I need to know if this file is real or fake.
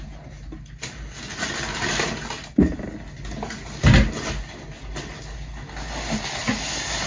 real